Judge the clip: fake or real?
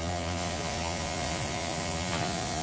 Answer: fake